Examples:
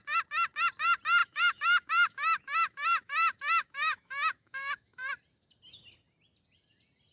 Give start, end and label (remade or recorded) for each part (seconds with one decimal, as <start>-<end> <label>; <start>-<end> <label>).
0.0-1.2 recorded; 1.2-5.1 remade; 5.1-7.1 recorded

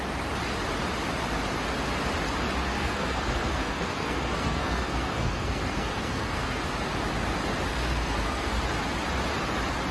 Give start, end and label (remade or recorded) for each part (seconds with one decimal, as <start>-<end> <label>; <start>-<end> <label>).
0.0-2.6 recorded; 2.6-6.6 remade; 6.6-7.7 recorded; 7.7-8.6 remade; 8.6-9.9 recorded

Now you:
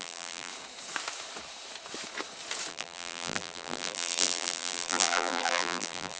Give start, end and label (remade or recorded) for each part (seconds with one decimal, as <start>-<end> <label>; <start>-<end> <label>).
0.0-0.5 remade; 0.5-2.7 recorded; 2.7-6.2 remade

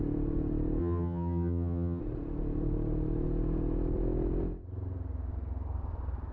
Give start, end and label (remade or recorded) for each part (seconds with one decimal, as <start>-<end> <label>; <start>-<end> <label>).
0.0-0.8 recorded; 0.8-2.0 remade; 2.0-6.3 recorded

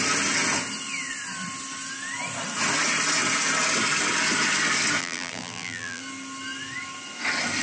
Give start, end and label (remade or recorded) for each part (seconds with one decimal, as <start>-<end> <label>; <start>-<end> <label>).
0.0-5.0 recorded; 5.0-6.0 remade; 6.0-7.6 recorded

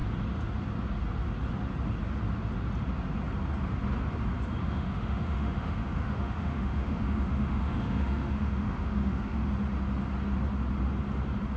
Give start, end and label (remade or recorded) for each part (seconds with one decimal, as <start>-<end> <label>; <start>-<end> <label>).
0.0-4.6 recorded; 4.6-9.5 remade; 9.5-11.6 recorded